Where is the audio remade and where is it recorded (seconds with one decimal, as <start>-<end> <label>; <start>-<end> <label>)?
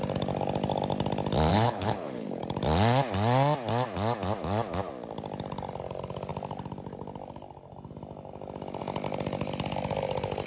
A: 0.0-1.5 recorded; 1.5-2.4 remade; 2.4-10.5 recorded